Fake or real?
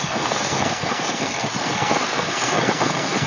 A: fake